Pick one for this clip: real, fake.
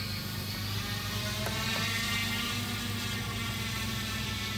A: real